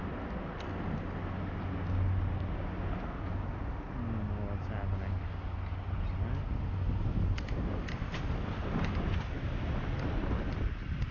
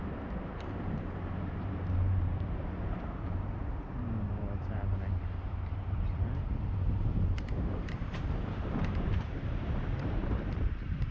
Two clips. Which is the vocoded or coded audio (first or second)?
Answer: second